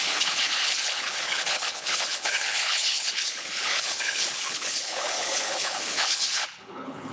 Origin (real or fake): fake